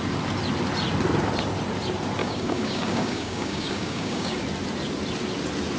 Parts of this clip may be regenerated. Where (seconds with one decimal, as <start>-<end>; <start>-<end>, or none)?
2.2-4.4